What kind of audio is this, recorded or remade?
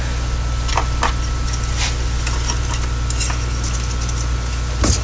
recorded